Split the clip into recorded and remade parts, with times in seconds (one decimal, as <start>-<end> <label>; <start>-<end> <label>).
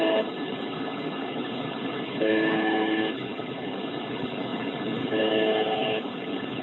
0.0-6.6 remade